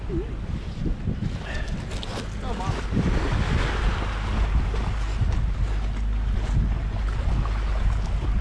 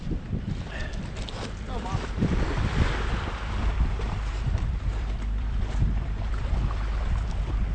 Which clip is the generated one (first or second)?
second